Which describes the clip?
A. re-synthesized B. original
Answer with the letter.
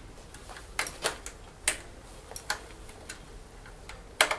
B